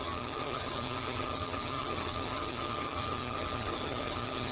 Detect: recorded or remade remade